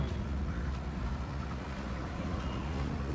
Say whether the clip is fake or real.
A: fake